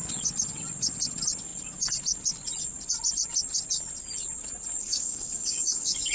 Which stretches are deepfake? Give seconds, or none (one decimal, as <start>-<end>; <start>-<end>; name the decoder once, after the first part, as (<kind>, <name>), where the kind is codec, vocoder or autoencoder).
4.8-6.1 (codec, DAC)